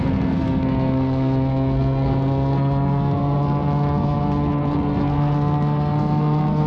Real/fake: fake